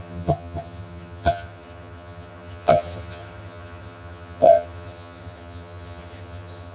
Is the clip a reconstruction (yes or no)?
yes